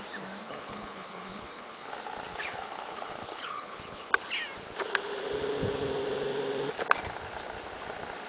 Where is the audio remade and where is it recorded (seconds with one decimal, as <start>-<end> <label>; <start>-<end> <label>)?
0.0-0.4 recorded; 0.4-1.9 remade; 1.9-2.3 recorded; 2.3-4.1 remade; 4.1-8.3 recorded